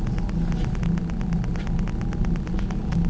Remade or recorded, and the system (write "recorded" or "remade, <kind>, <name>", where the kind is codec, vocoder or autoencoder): recorded